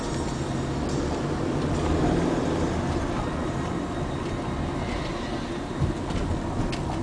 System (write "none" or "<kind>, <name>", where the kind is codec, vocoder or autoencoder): none